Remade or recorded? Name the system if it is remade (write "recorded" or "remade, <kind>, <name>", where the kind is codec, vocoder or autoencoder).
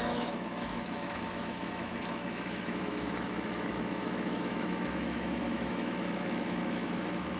remade, autoencoder, DAC-VAE